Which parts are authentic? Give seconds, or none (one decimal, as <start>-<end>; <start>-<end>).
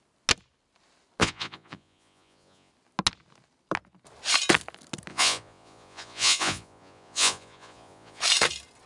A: 0.0-1.2; 2.7-5.1; 8.2-8.9